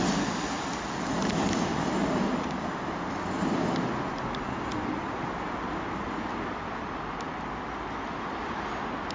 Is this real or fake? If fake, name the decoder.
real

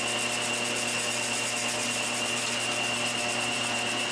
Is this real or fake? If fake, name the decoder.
real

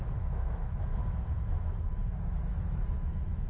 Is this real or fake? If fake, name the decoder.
fake, autoencoder, DAC-VAE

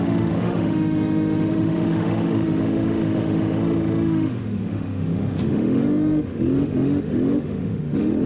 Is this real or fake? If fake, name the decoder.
fake, autoencoder, DAC-VAE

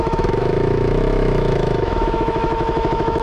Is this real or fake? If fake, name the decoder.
fake, autoencoder, DAC-VAE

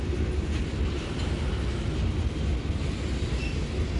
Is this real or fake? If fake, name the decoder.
real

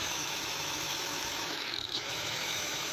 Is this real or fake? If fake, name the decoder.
fake, autoencoder, DAC-VAE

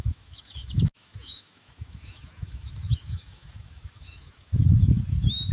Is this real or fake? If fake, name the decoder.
fake, autoencoder, DAC-VAE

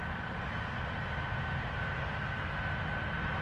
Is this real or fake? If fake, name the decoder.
real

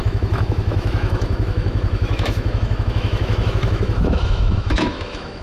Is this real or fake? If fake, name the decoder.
fake, autoencoder, DAC-VAE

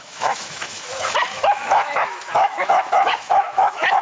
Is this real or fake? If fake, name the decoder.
fake, autoencoder, DAC-VAE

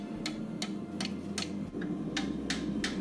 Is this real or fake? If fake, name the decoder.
real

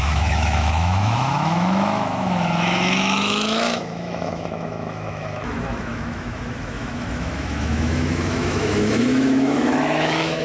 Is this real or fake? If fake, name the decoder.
fake, autoencoder, DAC-VAE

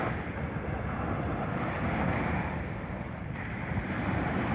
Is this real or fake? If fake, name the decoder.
real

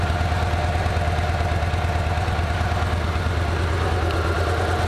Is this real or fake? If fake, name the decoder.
real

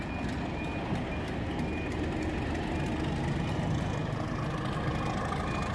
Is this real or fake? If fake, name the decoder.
real